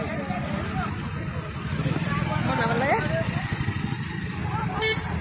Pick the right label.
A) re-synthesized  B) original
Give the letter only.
B